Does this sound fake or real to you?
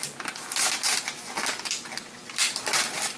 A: real